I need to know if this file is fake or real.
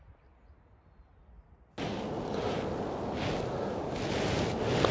real